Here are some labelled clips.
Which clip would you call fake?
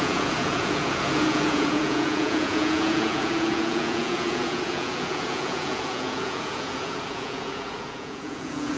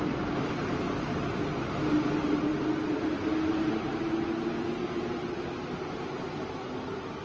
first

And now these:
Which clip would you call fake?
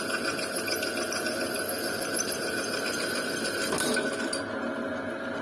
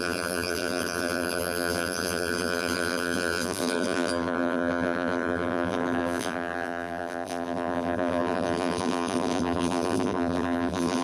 second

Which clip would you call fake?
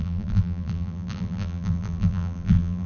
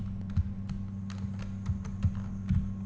first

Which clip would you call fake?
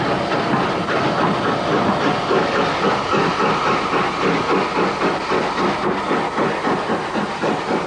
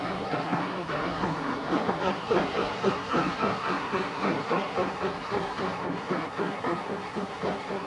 second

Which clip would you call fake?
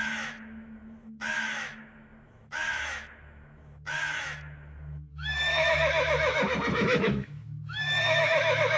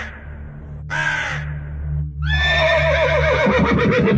first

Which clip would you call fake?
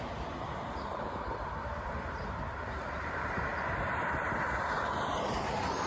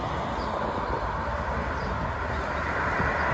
first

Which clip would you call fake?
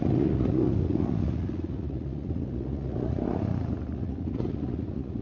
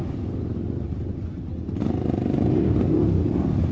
first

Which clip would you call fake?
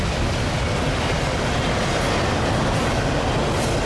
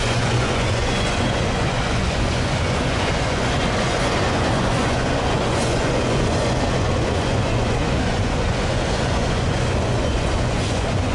second